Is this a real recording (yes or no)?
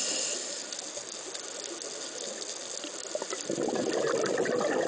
yes